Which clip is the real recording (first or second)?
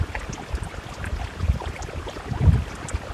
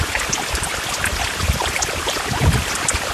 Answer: first